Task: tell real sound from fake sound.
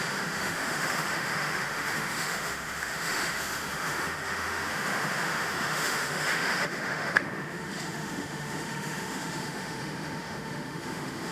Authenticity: fake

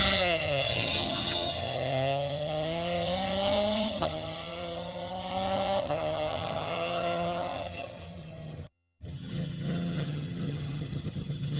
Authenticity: fake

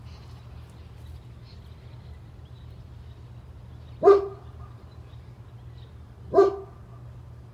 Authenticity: real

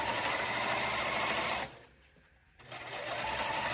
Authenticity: real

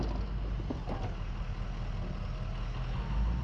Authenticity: real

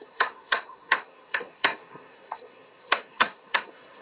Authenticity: fake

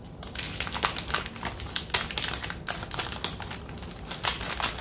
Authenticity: real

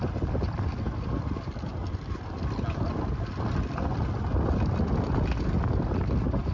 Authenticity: real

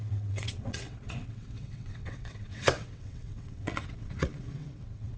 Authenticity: fake